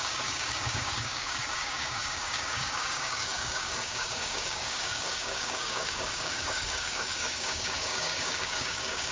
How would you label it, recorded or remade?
remade